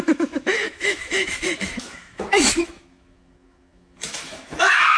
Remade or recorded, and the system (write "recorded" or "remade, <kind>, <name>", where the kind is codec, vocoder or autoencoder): remade, autoencoder, DAC-VAE